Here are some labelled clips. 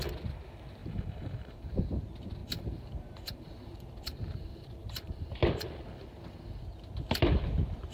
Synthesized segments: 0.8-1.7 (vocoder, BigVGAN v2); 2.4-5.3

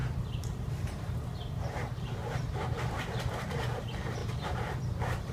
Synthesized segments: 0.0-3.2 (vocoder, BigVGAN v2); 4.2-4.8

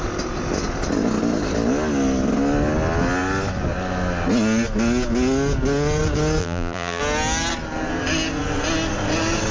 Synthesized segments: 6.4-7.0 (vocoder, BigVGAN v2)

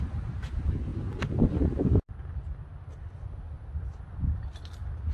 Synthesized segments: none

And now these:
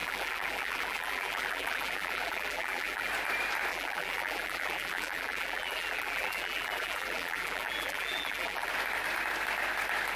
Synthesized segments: 0.0-3.1 (vocoder, BigVGAN v2); 3.7-8.7

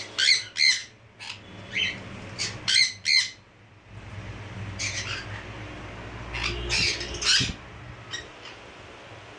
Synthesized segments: 0.8-5.8 (vocoder, BigVGAN v2); 8.3-9.0

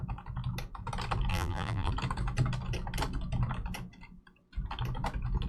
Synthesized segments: 1.3-1.9 (vocoder, BigVGAN v2)